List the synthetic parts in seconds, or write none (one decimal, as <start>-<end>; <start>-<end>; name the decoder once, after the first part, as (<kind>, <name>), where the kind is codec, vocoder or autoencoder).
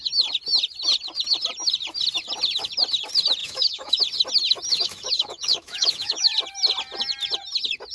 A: 3.4-4.0 (autoencoder, DAC-VAE); 4.7-6.3